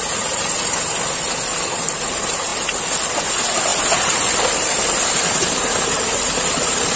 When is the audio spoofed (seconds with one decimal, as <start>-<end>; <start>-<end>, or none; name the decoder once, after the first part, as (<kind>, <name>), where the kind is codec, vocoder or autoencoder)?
0.0-2.5 (vocoder, BigVGAN v2); 3.3-7.0